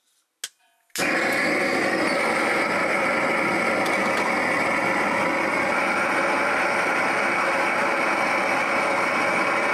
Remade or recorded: recorded